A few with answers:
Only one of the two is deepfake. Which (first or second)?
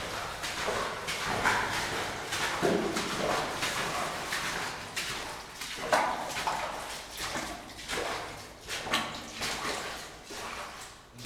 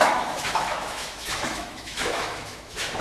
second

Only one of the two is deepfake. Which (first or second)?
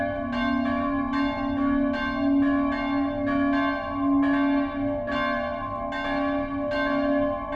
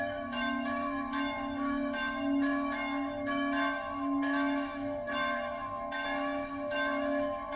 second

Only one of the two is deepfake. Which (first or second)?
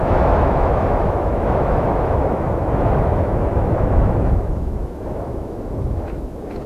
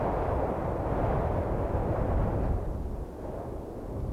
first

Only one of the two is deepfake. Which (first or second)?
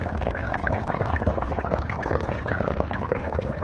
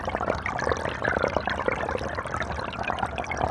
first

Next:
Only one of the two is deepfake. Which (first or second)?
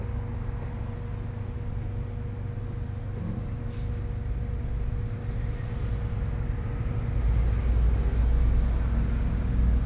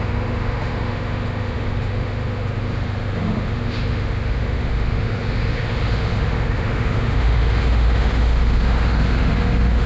second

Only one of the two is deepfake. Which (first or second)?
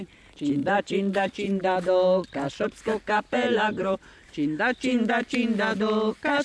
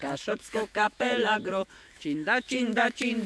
second